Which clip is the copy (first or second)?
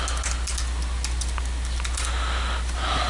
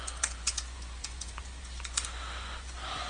second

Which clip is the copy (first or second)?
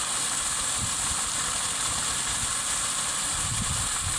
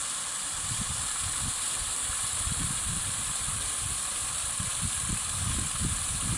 second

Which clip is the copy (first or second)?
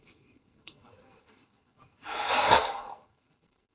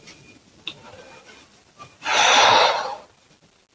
first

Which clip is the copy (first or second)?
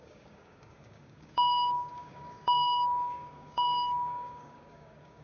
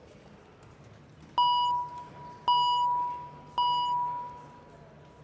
first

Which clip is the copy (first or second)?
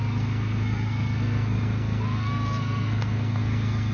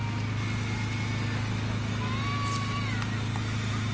first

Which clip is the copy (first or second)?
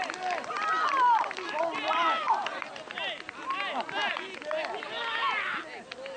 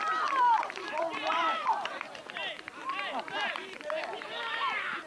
second